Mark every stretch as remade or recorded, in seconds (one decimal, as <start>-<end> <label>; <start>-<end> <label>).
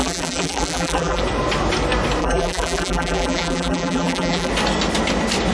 0.0-1.2 remade; 1.2-2.2 recorded; 2.2-4.5 remade; 4.5-5.5 recorded